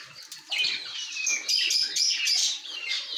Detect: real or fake real